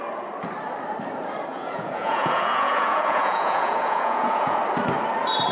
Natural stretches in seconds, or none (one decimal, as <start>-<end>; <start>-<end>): 0.0-1.5; 4.6-5.5